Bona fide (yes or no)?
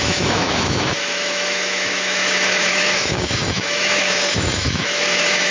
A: no